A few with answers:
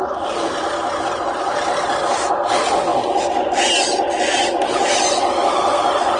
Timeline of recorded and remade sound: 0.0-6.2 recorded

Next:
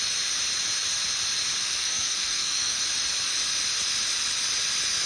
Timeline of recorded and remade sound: 0.0-1.6 recorded; 1.6-2.8 remade; 2.8-5.1 recorded

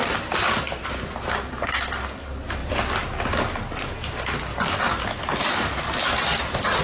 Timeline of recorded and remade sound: 0.0-6.8 recorded

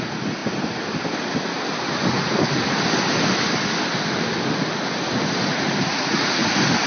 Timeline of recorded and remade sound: 0.0-5.9 recorded; 5.9-6.5 remade; 6.5-6.9 recorded

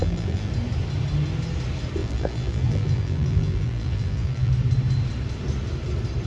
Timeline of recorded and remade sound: 0.0-0.5 remade; 0.5-2.0 recorded; 2.0-4.5 remade; 4.5-6.3 recorded

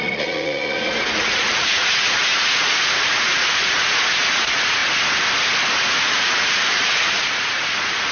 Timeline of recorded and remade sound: 0.0-4.8 remade; 4.8-6.0 recorded; 6.0-8.1 remade